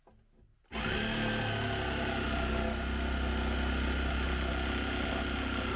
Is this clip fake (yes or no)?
no